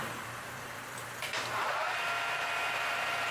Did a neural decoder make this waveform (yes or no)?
yes